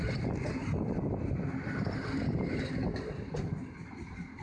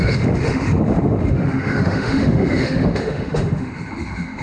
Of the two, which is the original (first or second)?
first